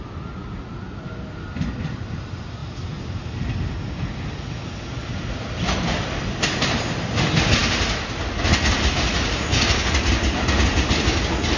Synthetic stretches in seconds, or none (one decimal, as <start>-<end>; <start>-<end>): none